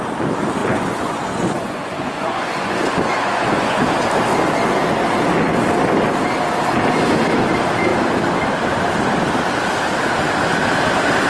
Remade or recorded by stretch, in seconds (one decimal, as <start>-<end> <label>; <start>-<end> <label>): 0.0-0.6 recorded; 0.6-3.8 remade; 3.8-11.3 recorded